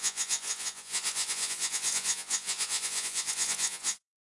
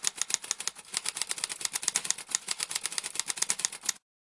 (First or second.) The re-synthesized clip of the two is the first